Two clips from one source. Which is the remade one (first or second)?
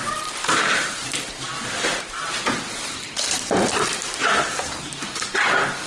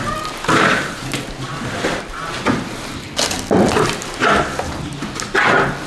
first